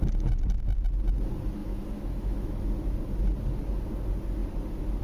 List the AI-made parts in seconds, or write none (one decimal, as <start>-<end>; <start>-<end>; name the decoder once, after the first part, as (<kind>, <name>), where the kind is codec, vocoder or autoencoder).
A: 1.6-2.6 (autoencoder, DAC-VAE)